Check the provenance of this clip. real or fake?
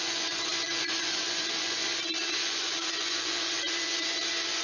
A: fake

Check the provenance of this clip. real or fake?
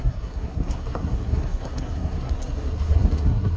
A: fake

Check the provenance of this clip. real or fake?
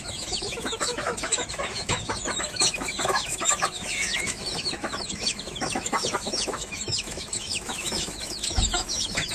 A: fake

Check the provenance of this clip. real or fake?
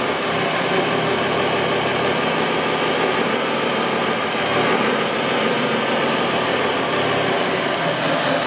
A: real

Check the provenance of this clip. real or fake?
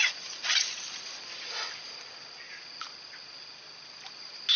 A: real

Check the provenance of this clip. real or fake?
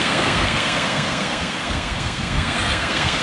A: fake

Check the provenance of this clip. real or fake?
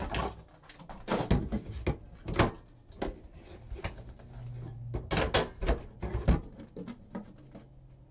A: real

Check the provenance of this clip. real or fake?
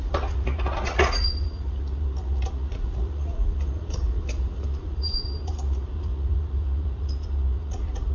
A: fake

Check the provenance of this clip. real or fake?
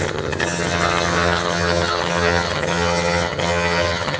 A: fake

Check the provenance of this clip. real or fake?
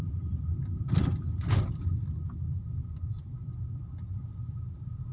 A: real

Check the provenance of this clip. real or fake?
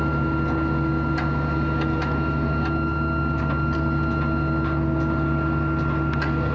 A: real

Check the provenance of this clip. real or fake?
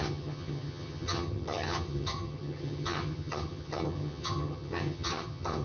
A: fake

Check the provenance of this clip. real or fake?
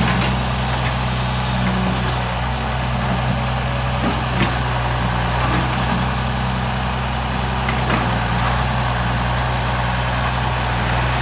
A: real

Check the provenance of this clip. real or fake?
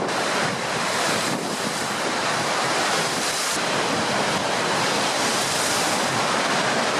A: fake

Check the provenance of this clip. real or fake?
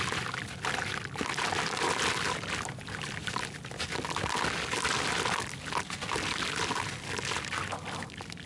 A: real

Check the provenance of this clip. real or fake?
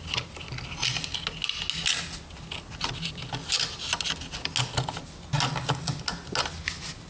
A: real